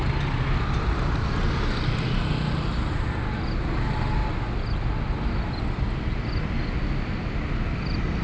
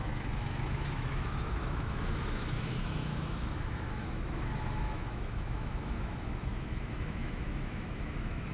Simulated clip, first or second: second